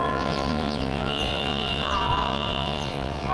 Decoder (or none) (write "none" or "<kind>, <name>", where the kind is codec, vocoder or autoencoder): vocoder, WaveNeXt